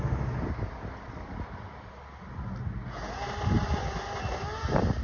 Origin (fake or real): real